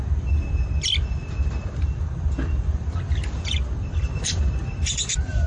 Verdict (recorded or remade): recorded